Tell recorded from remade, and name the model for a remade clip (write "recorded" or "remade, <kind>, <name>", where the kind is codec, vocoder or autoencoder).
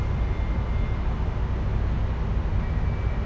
recorded